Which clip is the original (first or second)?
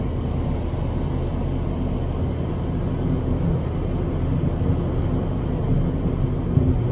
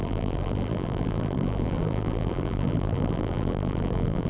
first